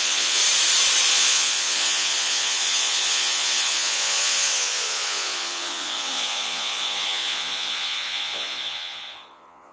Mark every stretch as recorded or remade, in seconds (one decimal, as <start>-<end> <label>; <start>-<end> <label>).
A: 0.0-0.4 remade; 0.4-1.1 recorded; 1.1-9.7 remade